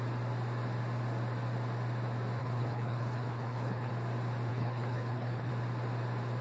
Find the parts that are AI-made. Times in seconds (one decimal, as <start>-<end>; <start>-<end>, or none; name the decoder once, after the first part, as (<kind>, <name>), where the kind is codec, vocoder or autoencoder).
2.4-3.9 (codec, HILCodec); 4.5-5.5